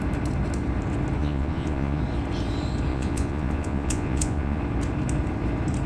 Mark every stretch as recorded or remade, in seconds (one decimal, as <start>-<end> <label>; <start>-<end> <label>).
0.0-1.2 recorded; 1.2-2.0 remade; 2.0-2.9 recorded; 2.9-4.6 remade; 4.6-5.9 recorded